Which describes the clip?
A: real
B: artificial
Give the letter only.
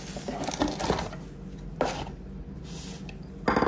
A